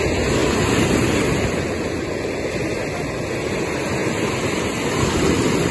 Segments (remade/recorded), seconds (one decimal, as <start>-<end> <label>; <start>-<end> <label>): 0.0-5.7 recorded